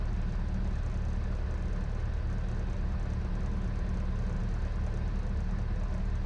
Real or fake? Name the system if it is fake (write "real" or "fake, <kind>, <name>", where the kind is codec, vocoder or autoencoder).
real